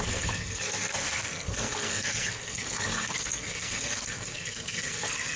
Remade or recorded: remade